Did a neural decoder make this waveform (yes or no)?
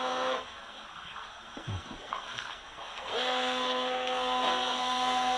yes